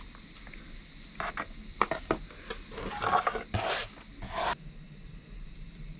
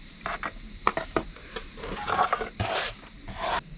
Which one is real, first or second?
first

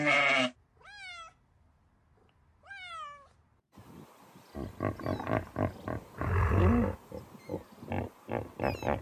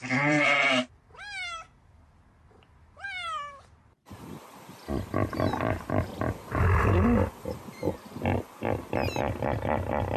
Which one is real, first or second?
first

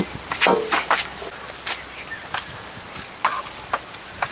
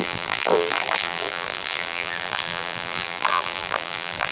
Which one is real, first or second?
first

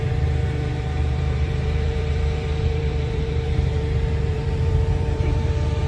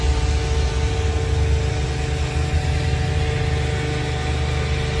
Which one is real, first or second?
second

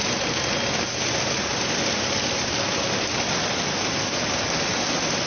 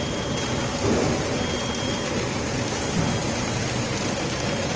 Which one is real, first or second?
first